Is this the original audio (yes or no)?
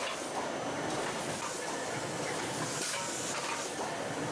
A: no